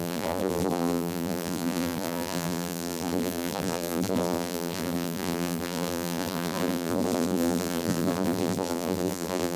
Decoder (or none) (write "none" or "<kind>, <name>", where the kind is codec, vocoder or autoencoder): vocoder, BigVGAN v2